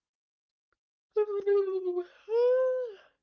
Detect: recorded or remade recorded